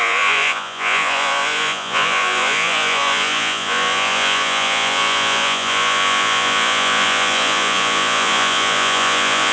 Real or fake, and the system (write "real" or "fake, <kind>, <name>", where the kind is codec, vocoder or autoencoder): fake, vocoder, Vocos